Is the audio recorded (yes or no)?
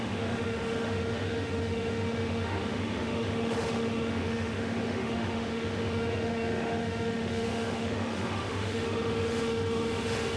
no